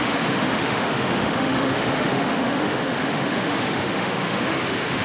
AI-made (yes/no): yes